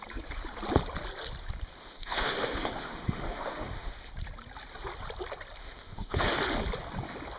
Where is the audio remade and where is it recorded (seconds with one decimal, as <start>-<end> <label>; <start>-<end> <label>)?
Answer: 0.0-1.8 recorded; 1.8-3.9 remade; 3.9-5.6 recorded; 5.6-6.4 remade; 6.4-7.4 recorded